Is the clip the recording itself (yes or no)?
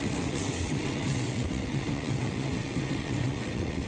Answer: no